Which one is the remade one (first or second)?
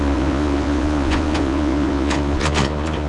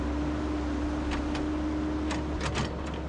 first